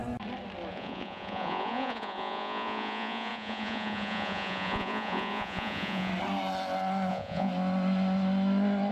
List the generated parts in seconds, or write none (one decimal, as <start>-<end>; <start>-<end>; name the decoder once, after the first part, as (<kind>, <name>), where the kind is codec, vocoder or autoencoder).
0.7-6.1 (vocoder, Vocos); 7.1-7.5